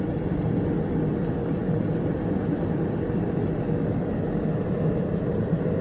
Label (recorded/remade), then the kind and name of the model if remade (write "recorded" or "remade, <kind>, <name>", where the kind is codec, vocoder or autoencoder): recorded